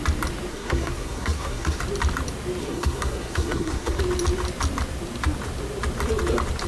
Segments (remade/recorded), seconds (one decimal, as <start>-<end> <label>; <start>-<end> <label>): 0.0-0.5 recorded; 0.5-1.8 remade; 1.8-2.6 recorded; 2.6-4.0 remade; 4.0-6.7 recorded